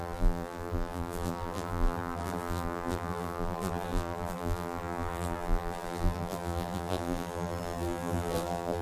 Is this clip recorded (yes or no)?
no